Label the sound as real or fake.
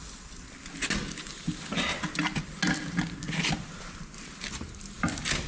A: real